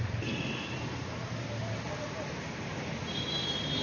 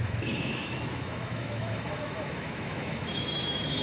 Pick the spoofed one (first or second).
second